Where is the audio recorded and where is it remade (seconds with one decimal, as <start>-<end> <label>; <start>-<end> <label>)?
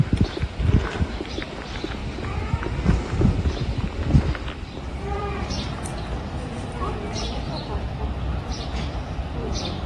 0.0-4.9 recorded; 4.9-9.9 remade